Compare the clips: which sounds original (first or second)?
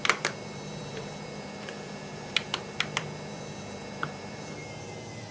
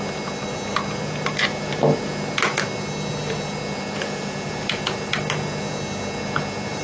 second